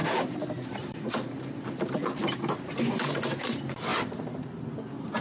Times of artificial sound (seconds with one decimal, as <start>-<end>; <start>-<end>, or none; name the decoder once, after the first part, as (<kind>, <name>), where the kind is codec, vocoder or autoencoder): 0.0-3.1 (vocoder, BigVGAN v2); 3.9-4.6